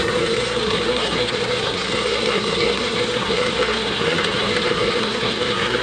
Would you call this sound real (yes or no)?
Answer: no